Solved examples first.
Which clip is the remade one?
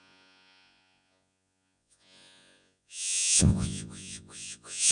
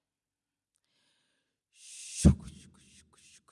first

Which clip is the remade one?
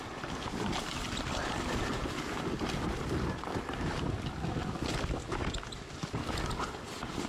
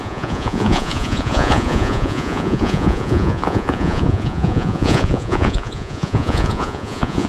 second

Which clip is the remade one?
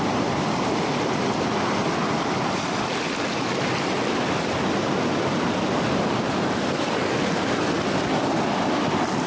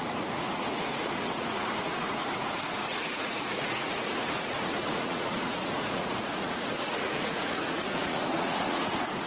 second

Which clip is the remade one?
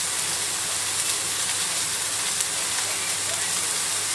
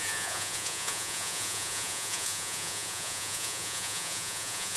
second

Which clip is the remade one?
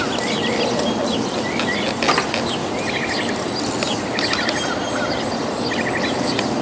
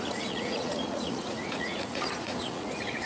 second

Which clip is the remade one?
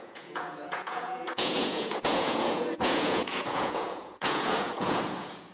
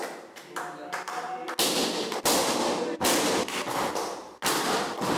first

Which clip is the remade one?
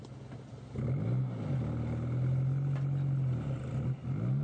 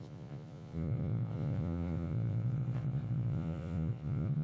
second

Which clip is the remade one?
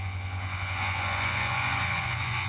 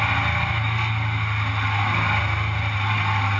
first